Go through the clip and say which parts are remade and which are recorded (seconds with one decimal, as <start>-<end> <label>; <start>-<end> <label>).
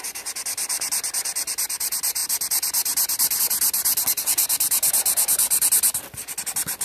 0.0-6.8 recorded